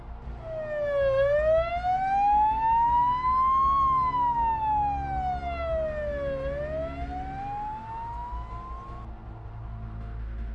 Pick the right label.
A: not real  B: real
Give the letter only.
B